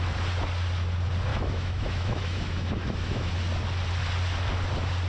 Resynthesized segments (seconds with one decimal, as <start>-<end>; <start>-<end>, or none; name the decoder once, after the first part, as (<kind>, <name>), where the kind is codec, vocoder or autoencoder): 1.3-3.3 (autoencoder, DAC-VAE)